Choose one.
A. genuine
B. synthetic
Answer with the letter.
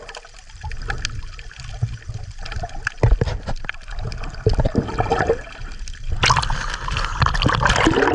A